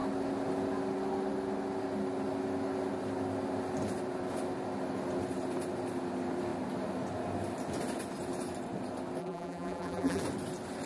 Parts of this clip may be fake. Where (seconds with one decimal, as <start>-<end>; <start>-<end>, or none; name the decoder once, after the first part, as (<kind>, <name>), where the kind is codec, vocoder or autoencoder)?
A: 9.2-10.2 (vocoder, BigVGAN v2)